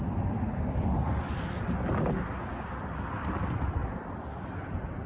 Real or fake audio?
real